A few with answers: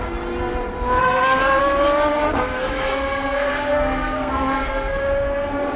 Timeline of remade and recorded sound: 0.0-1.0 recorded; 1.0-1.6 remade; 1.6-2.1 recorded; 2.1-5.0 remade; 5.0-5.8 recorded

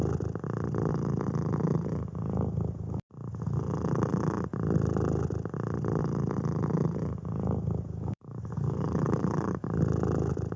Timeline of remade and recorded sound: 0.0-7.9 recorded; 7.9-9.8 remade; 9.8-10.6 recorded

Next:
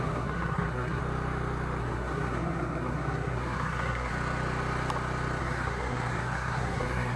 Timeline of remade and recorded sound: 0.0-1.0 remade; 1.0-1.8 recorded; 1.8-4.1 remade; 4.1-5.4 recorded; 5.4-7.2 remade

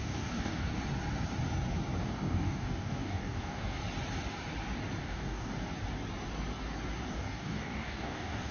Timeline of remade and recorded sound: 0.0-0.7 remade; 0.7-2.0 recorded; 2.0-3.8 remade; 3.8-5.0 recorded; 5.0-5.5 remade; 5.5-7.1 recorded; 7.1-8.5 remade